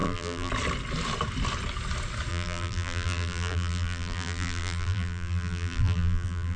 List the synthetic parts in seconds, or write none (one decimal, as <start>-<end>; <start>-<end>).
0.0-0.5; 2.3-6.6